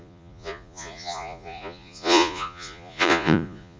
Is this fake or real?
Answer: fake